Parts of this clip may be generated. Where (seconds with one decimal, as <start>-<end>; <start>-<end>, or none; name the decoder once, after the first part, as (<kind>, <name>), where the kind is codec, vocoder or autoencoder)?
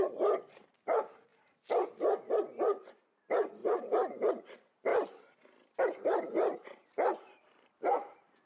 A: 0.0-1.3 (vocoder, BigVGAN v2); 2.4-3.6; 4.3-4.9; 5.8-8.5